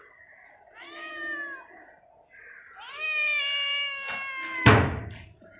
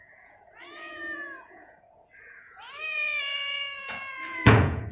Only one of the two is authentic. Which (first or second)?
first